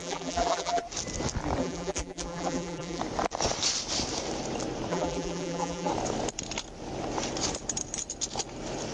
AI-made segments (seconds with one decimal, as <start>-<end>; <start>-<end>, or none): 0.0-0.8; 1.6-3.0; 4.9-5.9